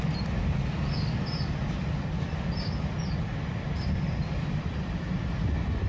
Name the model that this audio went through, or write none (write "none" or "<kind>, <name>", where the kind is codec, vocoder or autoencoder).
none